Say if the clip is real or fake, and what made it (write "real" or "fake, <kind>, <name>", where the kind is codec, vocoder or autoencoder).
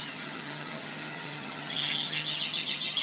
fake, vocoder, HiFi-GAN